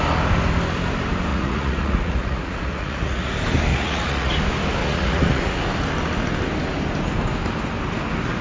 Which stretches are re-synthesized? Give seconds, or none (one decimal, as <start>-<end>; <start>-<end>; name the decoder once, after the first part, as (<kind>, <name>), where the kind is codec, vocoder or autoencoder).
1.3-3.3 (vocoder, Vocos); 3.7-4.3; 4.8-5.6